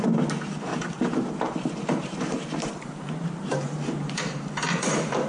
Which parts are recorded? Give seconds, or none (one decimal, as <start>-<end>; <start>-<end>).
0.0-0.7; 3.0-3.5